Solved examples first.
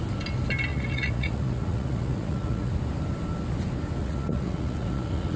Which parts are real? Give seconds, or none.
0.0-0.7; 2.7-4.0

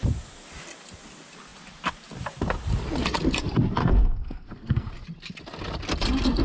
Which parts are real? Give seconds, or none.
0.0-3.8; 4.9-6.4